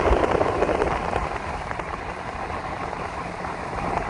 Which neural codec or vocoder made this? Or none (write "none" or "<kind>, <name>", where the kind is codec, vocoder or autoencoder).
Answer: none